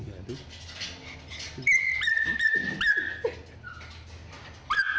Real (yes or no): yes